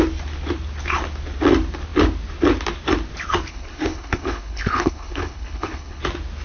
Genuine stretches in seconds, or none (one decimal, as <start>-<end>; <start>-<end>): 0.0-3.5; 6.0-6.4